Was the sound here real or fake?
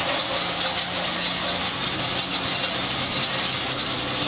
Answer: real